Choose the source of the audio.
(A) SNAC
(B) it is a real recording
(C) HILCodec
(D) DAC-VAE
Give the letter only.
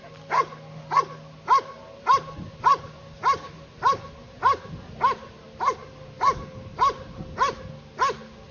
B